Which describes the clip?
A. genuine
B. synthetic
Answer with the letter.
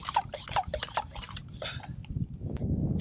A